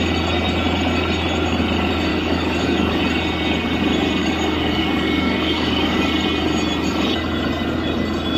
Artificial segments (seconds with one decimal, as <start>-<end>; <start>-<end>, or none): 2.1-3.0; 4.2-6.1